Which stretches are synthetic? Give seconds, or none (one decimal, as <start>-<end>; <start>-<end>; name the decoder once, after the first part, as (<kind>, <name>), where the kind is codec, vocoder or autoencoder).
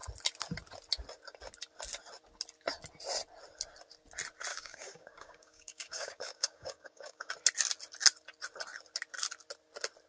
4.5-7.3 (codec, DAC)